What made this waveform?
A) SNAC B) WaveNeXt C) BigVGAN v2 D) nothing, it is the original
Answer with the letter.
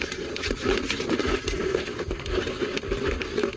D